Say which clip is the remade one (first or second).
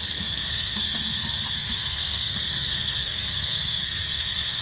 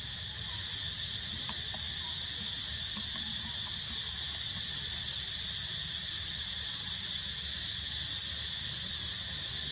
first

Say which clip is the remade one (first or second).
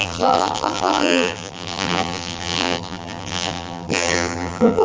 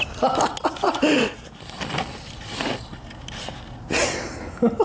first